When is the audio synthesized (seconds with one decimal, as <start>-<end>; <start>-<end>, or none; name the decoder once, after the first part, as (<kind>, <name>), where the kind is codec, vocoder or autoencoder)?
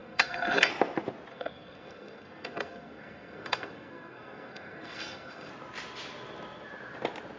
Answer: 0.0-0.7 (codec, SNAC); 1.3-5.5